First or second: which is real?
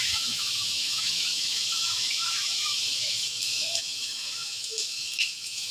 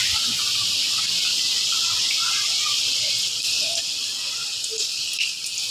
second